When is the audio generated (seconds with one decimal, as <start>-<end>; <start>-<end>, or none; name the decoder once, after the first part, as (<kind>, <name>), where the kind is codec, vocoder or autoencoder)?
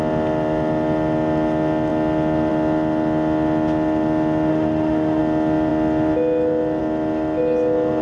4.5-5.2 (autoencoder, DAC-VAE)